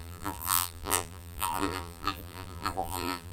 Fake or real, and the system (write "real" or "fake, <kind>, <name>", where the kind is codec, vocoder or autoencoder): fake, vocoder, BigVGAN v2